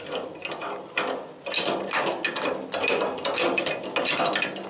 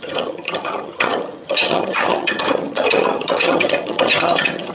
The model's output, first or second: second